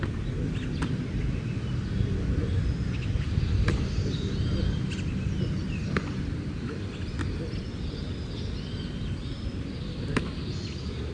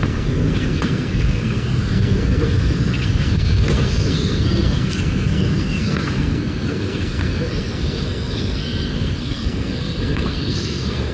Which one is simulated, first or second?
second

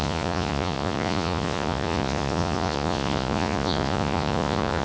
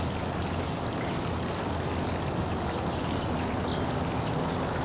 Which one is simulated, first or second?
first